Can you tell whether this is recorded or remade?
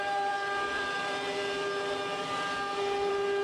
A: remade